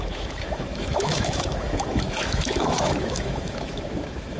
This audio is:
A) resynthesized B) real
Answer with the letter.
A